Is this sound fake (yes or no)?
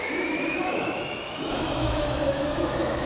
yes